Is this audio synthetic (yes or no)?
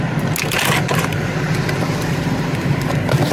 no